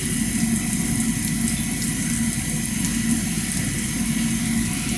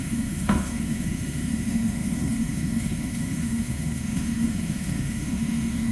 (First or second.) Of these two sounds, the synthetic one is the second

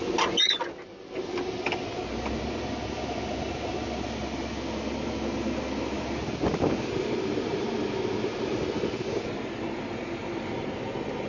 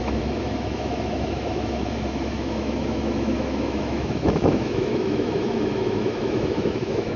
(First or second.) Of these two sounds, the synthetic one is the second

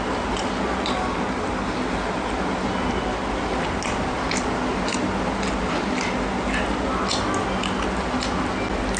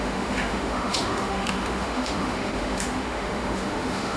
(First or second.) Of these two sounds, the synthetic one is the second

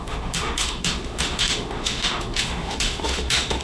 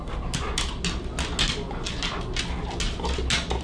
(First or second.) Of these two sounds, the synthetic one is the first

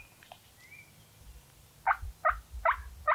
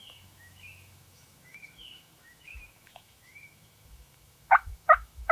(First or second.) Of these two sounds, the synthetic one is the second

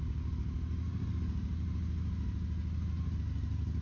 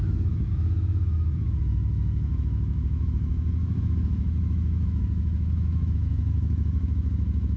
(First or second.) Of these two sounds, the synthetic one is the second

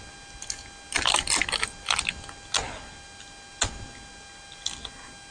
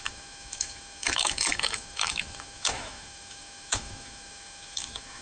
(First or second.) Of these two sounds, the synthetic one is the second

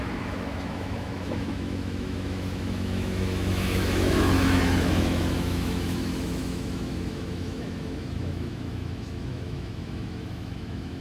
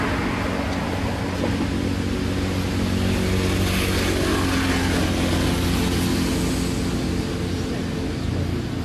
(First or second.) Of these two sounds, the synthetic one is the first